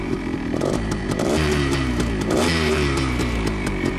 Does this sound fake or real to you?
fake